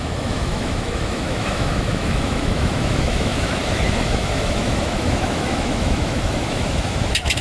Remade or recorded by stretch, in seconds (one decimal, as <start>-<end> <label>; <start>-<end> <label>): 0.0-7.4 remade